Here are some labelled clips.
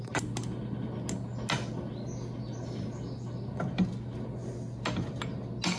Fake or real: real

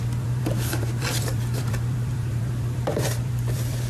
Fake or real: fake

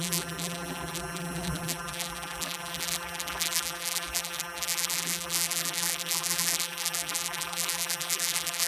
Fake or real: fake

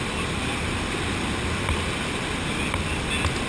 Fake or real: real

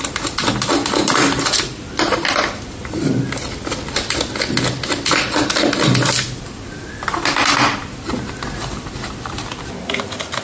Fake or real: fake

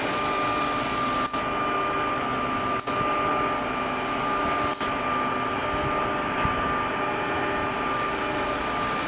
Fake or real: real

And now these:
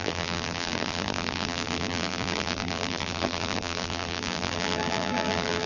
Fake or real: fake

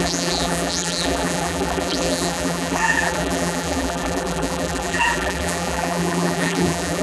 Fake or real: fake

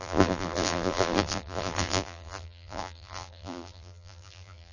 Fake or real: fake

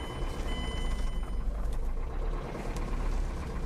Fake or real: real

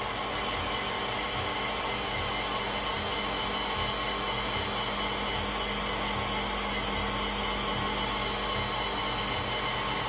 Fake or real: real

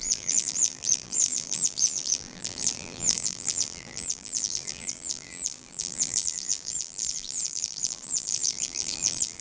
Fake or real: fake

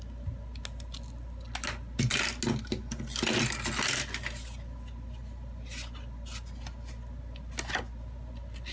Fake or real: real